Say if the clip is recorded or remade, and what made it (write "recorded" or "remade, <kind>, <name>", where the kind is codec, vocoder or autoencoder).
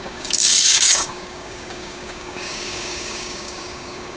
remade, codec, DAC